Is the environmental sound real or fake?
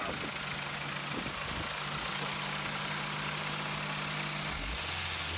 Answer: real